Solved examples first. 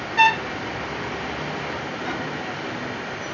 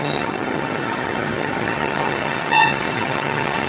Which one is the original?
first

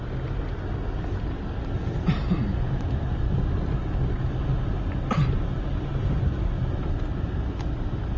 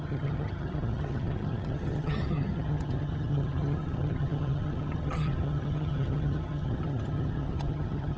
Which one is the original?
first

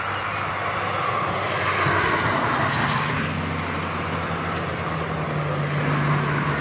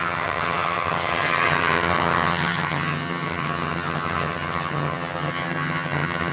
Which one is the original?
first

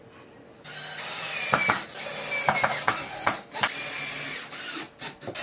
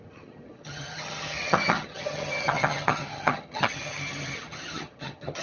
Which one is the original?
first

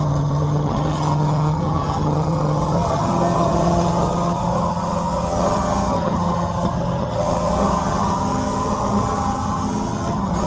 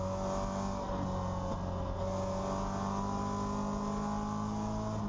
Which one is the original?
second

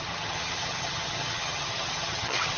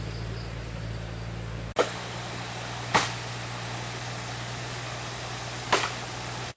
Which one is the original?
second